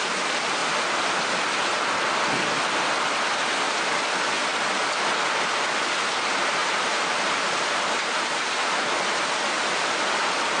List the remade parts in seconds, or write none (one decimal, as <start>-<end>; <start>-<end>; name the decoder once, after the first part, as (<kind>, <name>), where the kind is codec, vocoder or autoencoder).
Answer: 6.6-8.6 (vocoder, BigVGAN v2)